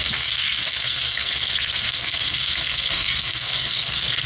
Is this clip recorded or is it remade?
remade